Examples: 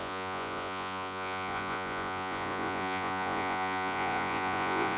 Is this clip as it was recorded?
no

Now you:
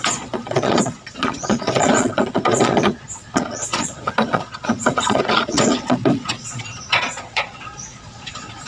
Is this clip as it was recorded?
no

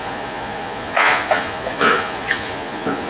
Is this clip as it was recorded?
no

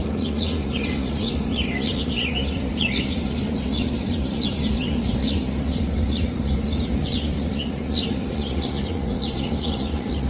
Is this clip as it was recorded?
no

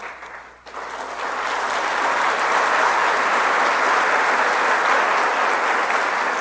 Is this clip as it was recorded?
yes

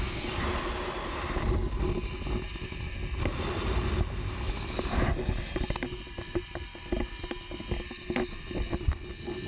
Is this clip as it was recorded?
yes